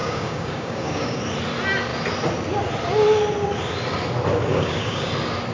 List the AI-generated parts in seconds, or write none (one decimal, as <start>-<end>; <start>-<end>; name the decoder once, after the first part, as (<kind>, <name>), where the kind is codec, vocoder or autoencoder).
0.0-1.2 (codec, DAC); 4.5-5.1